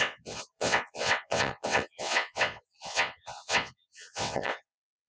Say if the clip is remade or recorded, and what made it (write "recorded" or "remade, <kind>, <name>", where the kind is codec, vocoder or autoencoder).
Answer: remade, vocoder, WaveNeXt